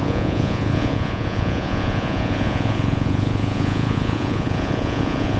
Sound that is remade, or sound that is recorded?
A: remade